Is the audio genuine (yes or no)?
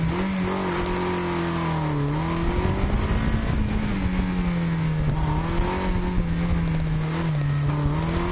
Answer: yes